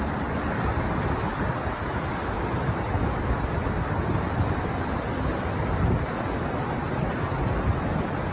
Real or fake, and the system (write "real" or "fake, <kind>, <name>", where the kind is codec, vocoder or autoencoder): real